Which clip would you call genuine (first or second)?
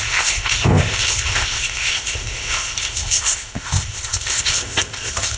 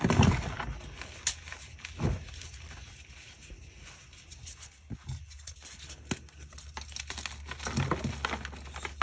second